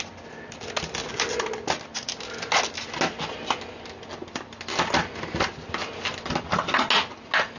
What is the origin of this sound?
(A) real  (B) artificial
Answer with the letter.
A